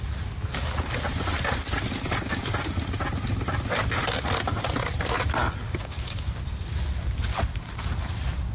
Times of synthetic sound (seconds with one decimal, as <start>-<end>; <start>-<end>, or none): 5.8-6.4

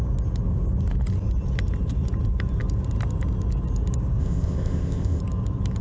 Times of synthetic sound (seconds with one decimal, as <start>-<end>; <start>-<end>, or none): 4.2-5.2

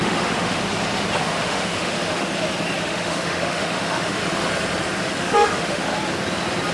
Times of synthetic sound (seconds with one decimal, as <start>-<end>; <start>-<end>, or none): 0.0-0.6; 1.2-2.3; 2.8-4.2; 5.2-5.9

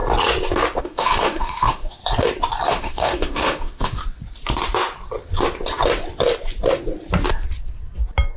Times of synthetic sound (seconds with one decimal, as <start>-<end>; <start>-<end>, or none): 0.8-2.0; 2.7-4.0

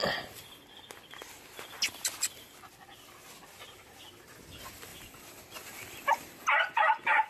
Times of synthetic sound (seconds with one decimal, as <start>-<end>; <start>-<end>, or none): 4.9-6.2

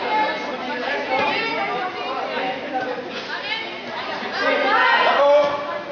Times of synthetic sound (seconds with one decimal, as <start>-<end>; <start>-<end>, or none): none

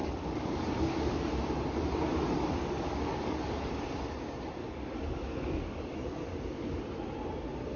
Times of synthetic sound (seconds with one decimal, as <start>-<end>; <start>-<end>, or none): 0.0-1.3; 2.1-3.6; 4.6-6.8

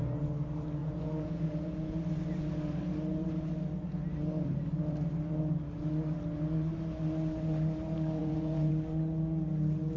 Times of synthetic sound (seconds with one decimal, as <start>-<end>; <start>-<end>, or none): 0.8-2.0; 8.2-8.7